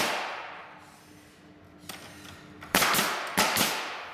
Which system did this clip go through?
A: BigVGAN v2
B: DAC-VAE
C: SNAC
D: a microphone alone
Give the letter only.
D